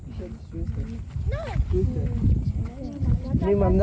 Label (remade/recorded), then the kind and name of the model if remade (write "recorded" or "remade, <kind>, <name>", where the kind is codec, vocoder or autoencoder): recorded